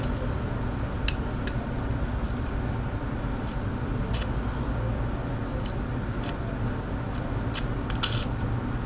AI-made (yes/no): no